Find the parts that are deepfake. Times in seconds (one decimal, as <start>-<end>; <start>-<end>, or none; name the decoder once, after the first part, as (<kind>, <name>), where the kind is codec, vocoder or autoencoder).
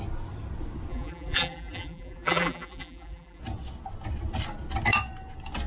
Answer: 0.9-3.4 (vocoder, BigVGAN v2)